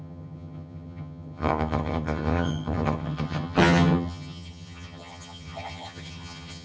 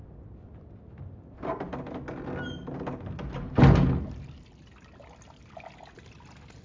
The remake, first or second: first